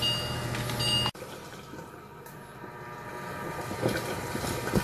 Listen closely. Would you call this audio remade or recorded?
recorded